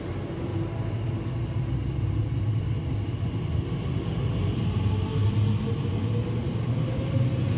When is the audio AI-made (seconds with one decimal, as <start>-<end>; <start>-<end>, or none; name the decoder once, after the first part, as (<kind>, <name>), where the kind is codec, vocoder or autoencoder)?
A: none